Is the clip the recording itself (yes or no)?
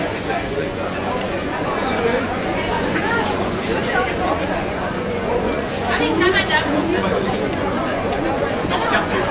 no